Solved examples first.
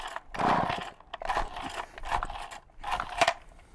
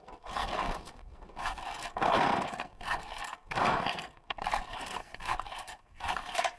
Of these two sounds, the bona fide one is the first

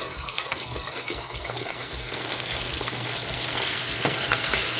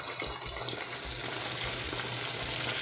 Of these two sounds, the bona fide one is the second